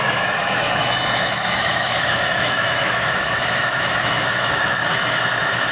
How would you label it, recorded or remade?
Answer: remade